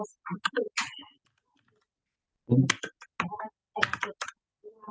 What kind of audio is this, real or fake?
real